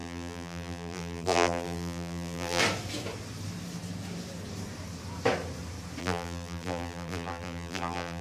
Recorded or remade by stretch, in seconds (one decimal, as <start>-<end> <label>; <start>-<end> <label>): 0.0-2.6 remade; 2.6-6.0 recorded; 6.0-8.2 remade